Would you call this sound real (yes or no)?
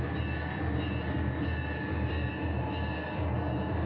yes